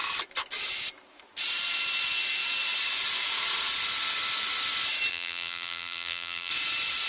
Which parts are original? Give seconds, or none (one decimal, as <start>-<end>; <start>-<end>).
0.0-5.1; 6.5-7.1